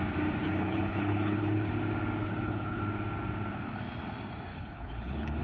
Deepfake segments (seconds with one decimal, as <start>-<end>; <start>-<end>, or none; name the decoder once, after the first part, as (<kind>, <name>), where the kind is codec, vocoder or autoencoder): 0.4-1.7 (codec, HILCodec); 2.2-2.8; 4.5-5.4